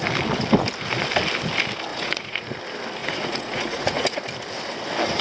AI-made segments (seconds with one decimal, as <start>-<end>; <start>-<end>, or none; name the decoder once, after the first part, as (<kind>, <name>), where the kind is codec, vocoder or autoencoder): 1.9-2.6 (vocoder, Vocos); 3.0-4.2